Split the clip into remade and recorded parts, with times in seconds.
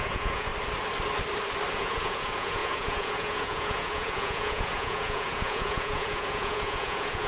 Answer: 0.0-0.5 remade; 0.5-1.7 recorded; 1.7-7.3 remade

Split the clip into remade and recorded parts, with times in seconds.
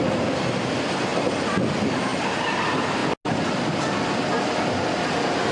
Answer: 0.0-5.5 recorded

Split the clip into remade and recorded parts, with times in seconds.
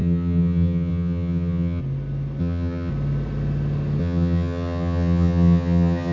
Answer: 0.0-1.8 remade; 1.8-2.4 recorded; 2.4-2.9 remade; 2.9-4.0 recorded; 4.0-6.1 remade